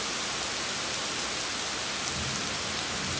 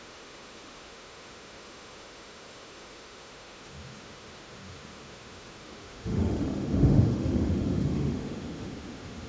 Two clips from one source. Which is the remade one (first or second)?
second